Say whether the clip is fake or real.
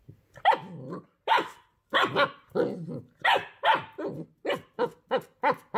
real